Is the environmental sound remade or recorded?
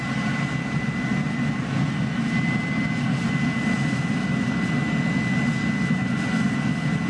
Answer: recorded